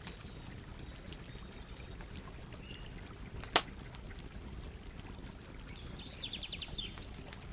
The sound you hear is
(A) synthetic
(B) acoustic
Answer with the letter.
B